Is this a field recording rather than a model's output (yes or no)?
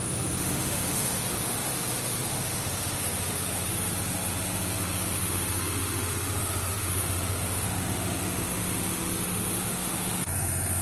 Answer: no